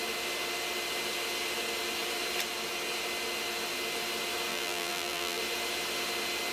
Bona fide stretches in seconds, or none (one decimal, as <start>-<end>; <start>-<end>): 0.0-4.5; 5.4-6.5